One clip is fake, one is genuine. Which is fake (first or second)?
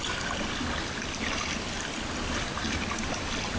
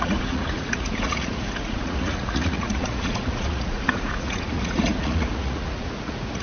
second